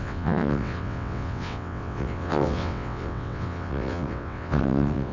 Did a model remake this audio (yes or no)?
yes